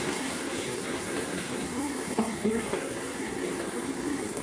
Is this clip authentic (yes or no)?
no